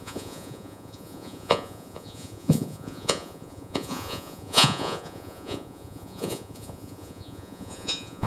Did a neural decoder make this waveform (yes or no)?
yes